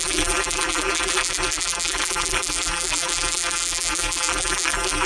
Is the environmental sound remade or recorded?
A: remade